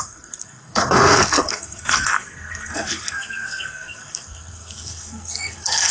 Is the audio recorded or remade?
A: remade